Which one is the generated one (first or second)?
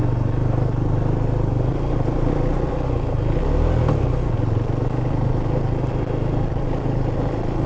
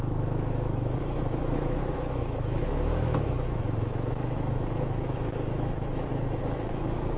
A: second